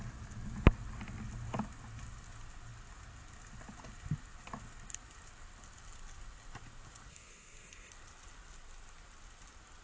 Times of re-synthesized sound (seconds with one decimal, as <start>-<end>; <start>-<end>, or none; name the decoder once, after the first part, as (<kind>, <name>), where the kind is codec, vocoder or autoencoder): 7.1-7.9 (codec, SNAC)